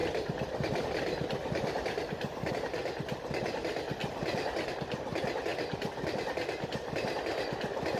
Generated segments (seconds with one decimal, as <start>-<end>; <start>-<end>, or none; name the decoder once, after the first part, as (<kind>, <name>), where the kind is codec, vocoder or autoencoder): 0.0-2.5 (vocoder, BigVGAN v2); 4.0-4.7; 5.5-6.9